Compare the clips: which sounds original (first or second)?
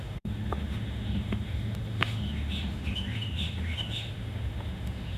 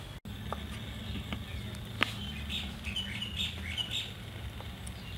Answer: second